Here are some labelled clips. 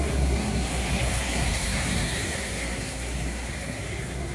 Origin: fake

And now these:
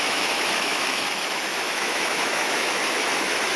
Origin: fake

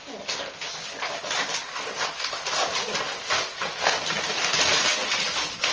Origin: real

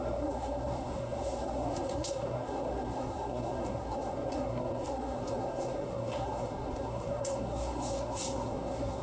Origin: fake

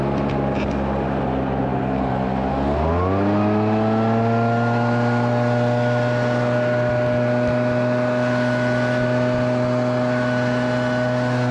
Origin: real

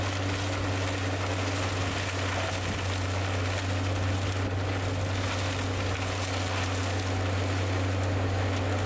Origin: real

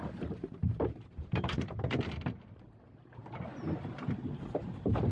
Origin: fake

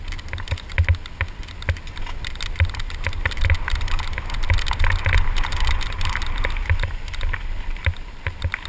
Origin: real